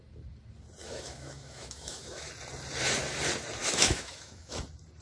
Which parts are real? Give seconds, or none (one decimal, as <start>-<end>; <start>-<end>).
0.0-0.8; 2.3-3.6; 4.6-5.0